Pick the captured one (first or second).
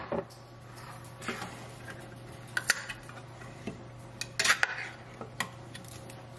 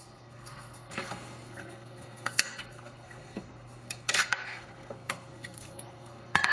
first